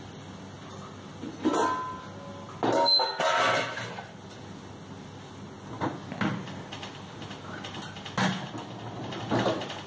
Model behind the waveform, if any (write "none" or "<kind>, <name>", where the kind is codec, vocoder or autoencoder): none